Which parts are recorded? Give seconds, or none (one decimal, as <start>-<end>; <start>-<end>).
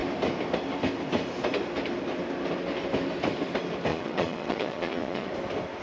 0.0-3.9; 5.3-5.8